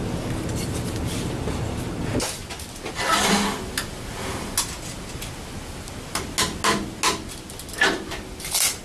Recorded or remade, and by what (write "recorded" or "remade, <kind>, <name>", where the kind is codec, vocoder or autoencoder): recorded